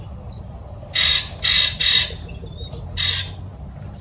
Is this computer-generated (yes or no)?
no